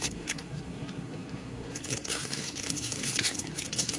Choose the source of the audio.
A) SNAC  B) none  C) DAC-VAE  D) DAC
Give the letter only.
A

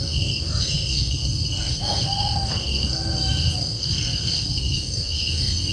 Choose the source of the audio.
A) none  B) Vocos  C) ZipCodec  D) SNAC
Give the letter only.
D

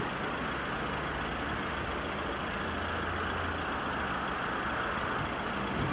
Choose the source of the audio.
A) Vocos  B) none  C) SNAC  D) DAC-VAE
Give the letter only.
B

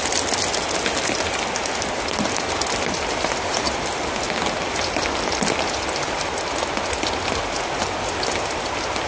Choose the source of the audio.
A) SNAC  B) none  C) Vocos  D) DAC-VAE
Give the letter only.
B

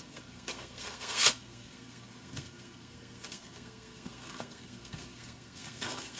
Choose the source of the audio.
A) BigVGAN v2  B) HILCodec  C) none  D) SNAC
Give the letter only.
D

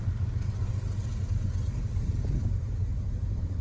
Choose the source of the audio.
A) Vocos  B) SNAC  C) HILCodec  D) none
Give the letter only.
D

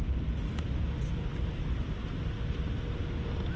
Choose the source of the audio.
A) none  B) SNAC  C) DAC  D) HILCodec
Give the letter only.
A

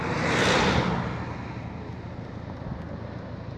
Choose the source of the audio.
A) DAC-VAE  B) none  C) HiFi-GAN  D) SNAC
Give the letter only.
B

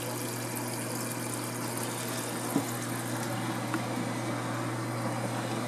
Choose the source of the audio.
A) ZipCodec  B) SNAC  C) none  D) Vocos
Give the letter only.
C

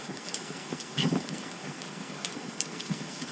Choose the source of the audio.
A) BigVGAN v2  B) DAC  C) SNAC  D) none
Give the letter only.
C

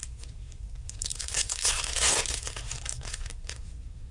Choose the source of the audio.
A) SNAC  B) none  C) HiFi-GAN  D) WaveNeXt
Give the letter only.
A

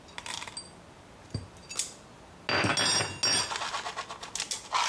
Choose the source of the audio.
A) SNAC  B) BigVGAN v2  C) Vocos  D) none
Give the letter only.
D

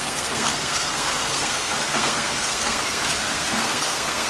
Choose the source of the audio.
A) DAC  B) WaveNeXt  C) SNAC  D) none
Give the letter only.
C